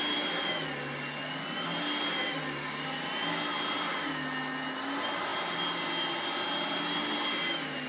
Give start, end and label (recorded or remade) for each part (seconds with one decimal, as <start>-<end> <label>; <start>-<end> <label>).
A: 0.0-7.9 recorded